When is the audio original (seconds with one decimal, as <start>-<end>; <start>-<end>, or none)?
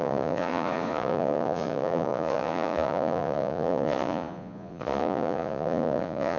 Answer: none